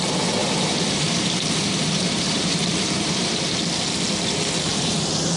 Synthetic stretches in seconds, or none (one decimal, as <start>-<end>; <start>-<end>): 0.4-3.6; 4.7-5.4